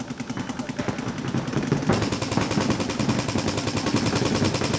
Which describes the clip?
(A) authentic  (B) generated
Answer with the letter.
A